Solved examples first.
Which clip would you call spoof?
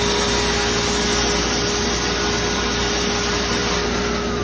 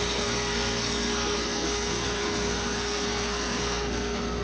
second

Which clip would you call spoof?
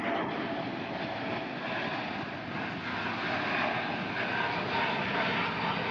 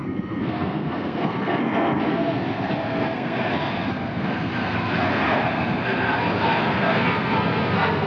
second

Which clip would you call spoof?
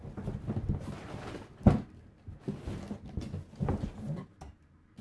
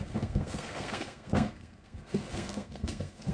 second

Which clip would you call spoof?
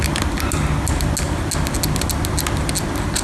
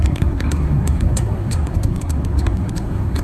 second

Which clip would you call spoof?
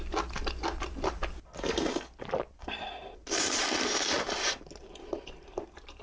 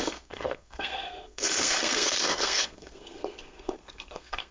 second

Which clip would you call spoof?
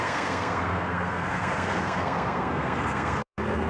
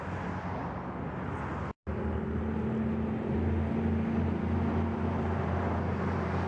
first